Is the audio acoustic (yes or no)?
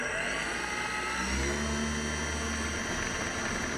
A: yes